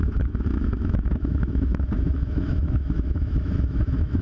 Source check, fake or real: fake